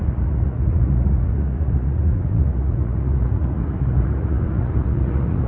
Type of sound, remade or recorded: remade